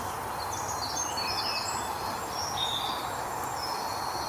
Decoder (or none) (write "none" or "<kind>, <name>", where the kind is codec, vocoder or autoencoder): none